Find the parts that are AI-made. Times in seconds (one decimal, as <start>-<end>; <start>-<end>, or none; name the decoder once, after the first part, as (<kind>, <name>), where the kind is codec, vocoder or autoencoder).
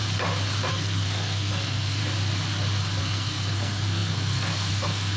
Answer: 0.7-2.0 (codec, SNAC); 3.0-5.2